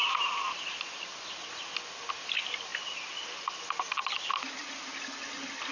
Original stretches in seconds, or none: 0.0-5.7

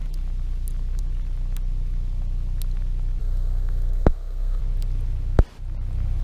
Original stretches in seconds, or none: 0.0-3.2; 4.6-6.2

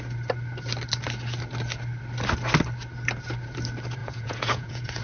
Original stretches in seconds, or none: 0.0-4.0

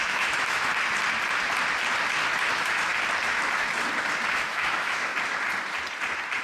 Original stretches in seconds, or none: 0.7-2.5; 2.9-4.3; 5.1-6.4

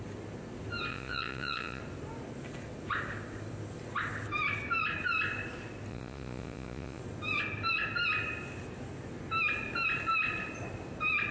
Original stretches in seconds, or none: 0.0-0.9; 1.8-5.9; 7.0-11.3

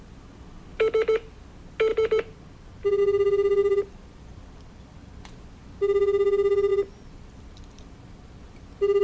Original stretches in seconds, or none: 0.0-1.9; 3.0-3.6; 5.3-6.7; 8.4-9.0